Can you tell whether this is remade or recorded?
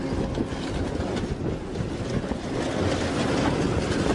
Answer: recorded